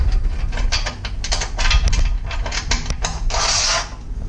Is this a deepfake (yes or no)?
no